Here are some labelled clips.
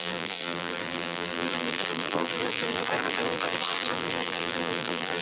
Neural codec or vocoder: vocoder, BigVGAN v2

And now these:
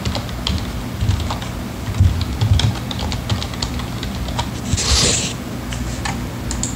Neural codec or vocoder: none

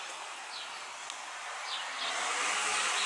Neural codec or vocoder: none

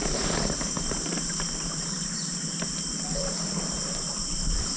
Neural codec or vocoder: vocoder, BigVGAN v2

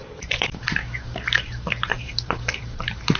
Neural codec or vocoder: vocoder, BigVGAN v2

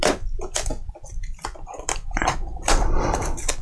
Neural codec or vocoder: vocoder, BigVGAN v2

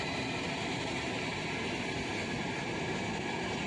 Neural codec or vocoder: vocoder, BigVGAN v2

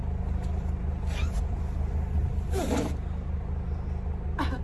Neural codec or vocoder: none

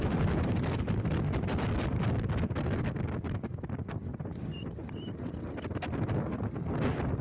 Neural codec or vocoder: none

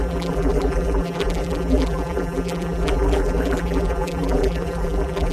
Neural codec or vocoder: vocoder, BigVGAN v2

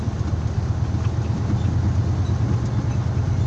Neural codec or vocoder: none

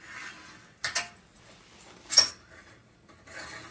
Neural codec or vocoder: none